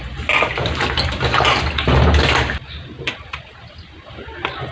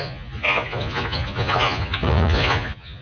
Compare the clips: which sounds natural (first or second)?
first